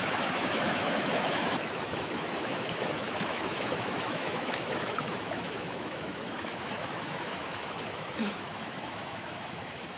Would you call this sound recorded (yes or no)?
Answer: no